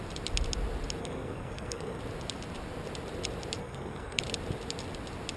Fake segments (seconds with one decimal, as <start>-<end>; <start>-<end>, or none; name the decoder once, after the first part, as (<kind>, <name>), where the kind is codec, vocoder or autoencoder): 1.0-2.0 (codec, SNAC); 3.6-4.2